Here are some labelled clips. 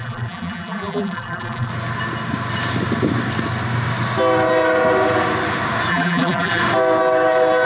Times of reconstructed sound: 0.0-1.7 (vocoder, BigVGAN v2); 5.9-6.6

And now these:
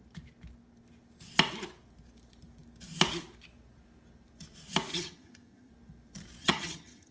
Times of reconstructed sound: 4.9-5.7 (vocoder, HiFi-GAN); 6.4-7.1

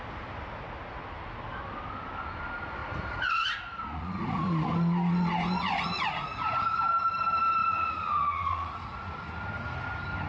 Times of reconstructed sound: 2.8-6.8 (vocoder, Vocos); 7.6-9.1